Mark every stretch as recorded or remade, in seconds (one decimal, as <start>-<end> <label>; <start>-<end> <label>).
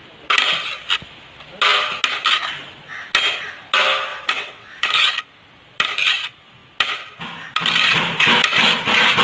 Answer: 0.0-4.1 recorded; 4.1-4.9 remade; 4.9-9.2 recorded